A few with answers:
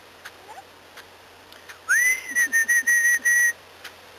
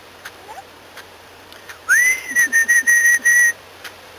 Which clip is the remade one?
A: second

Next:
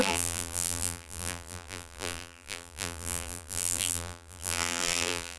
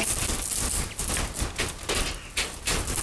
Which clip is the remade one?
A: first